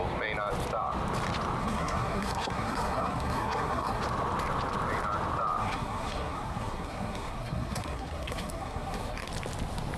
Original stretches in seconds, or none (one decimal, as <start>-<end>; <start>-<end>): 0.0-1.6; 4.0-5.6; 9.3-10.0